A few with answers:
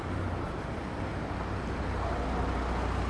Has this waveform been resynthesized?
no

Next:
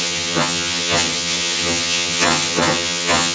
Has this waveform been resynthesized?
yes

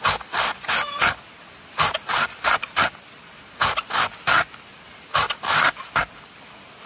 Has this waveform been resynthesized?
no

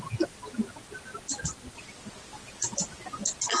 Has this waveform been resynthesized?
no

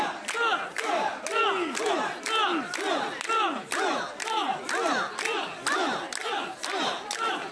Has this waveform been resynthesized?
no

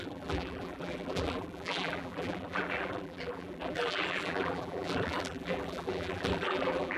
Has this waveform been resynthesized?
yes